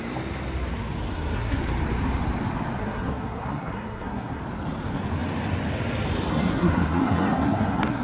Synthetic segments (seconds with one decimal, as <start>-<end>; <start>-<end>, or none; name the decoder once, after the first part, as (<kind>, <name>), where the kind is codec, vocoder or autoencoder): 1.1-1.6 (codec, SNAC); 2.8-4.4; 6.3-8.0